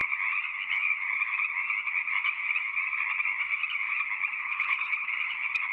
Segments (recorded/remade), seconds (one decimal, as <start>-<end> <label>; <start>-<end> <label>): 0.0-4.4 recorded; 4.4-5.1 remade; 5.1-5.7 recorded